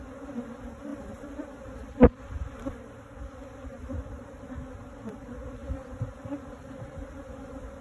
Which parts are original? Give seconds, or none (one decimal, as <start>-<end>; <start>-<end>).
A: 0.0-0.9; 4.6-7.8